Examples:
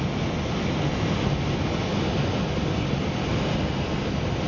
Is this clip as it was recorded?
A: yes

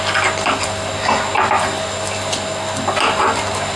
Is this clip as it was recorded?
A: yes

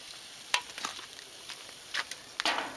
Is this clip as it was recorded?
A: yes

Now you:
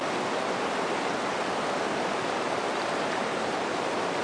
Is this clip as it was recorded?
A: yes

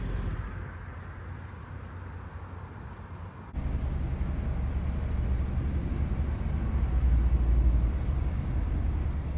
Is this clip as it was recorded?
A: yes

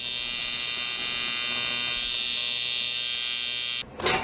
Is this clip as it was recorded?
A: yes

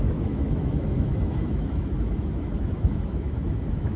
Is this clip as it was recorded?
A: no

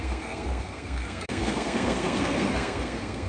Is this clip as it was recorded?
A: no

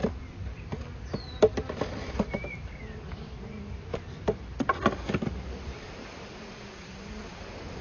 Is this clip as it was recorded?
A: yes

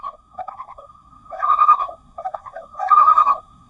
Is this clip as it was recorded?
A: no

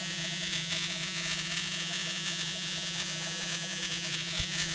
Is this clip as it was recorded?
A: no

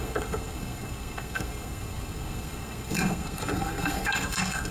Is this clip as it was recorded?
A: no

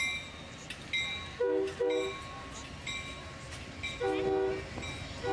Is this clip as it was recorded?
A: yes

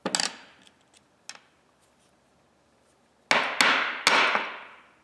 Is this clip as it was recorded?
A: yes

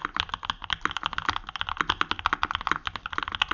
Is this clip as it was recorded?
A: yes